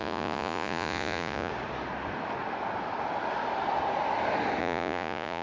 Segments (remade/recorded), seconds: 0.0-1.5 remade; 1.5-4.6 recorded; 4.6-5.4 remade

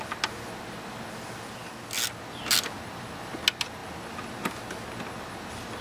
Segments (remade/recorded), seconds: 0.0-5.8 recorded

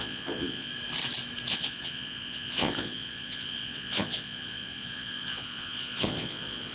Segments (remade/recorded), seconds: 0.0-0.7 remade; 0.7-1.5 recorded; 1.5-6.7 remade

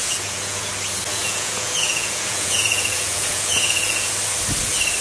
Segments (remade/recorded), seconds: 0.0-0.7 remade; 0.7-1.1 recorded; 1.1-4.1 remade; 4.1-5.0 recorded

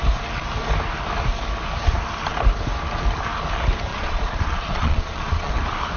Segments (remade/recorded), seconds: 0.0-3.9 recorded; 3.9-5.5 remade; 5.5-6.0 recorded

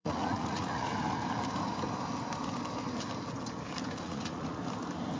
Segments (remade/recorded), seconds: 0.0-0.9 remade; 0.9-4.0 recorded; 4.0-4.6 remade; 4.6-5.2 recorded

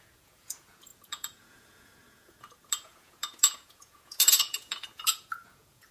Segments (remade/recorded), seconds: 0.0-5.9 remade